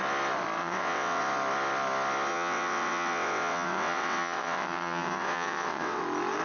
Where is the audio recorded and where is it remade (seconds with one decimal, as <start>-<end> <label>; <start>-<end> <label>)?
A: 0.0-0.6 recorded; 0.6-1.2 remade; 1.2-2.3 recorded; 2.3-6.0 remade; 6.0-6.4 recorded